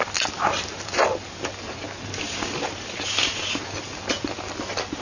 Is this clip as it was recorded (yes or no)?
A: yes